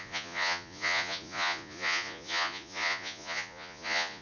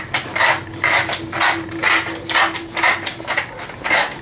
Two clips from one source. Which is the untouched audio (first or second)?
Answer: second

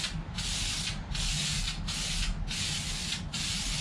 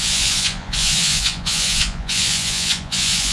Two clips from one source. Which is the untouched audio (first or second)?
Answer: first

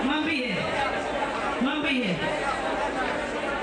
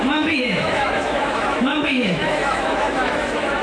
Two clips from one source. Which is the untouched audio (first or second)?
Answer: first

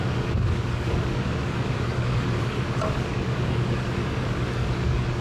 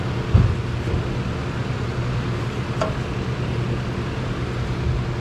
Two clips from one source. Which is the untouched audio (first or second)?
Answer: second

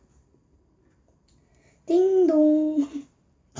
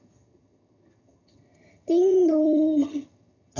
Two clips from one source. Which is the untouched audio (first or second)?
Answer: first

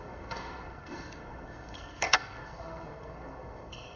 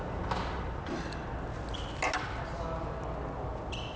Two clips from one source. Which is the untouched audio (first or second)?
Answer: second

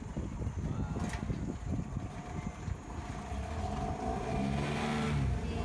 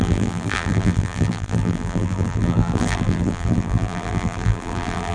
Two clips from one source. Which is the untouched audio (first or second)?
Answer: first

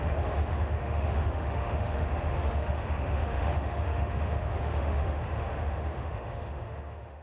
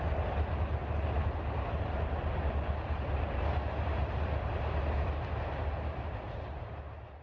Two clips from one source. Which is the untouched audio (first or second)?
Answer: second